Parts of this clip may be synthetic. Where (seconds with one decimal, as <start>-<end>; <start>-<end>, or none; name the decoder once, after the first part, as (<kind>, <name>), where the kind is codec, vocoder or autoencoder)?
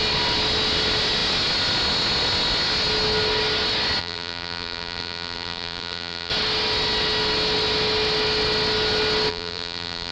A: 4.0-6.3 (vocoder, BigVGAN v2); 9.3-10.1